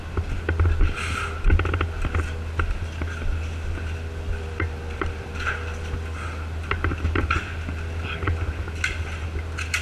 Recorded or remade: recorded